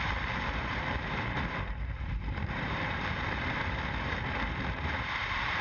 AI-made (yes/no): yes